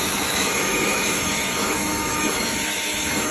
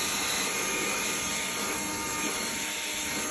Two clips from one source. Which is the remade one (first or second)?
first